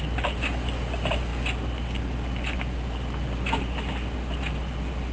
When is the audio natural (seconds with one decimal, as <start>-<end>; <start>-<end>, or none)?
0.0-5.1